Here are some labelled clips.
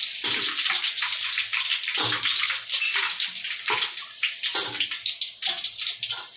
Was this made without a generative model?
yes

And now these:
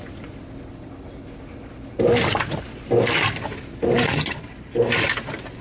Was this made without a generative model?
yes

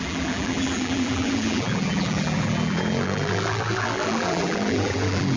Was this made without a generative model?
no